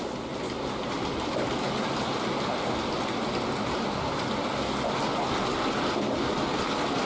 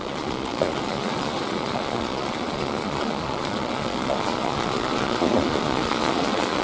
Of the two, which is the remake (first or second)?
second